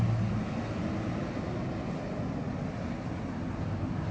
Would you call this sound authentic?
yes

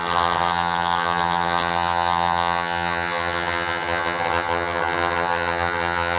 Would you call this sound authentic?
no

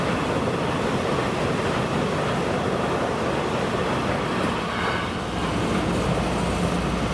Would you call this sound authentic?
yes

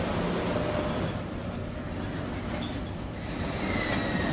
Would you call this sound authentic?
yes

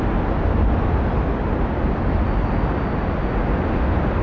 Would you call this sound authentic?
yes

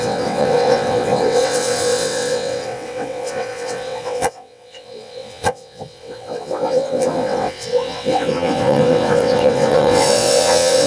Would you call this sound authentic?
no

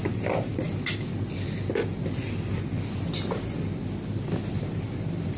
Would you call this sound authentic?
yes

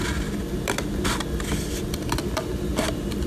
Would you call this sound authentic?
yes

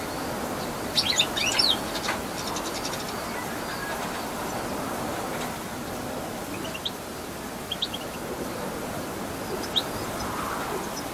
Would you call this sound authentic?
yes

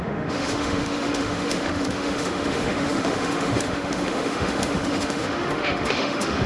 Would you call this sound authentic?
no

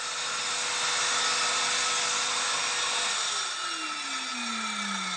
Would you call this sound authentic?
yes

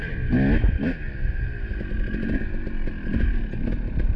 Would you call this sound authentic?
yes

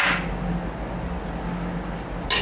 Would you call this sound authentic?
yes